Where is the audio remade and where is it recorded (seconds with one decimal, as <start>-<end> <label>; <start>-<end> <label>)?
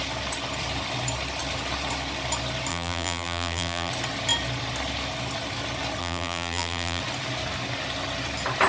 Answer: 0.0-2.7 recorded; 2.7-3.9 remade; 3.9-6.0 recorded; 6.0-7.0 remade; 7.0-8.7 recorded